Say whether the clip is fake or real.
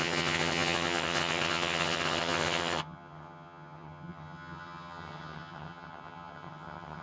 fake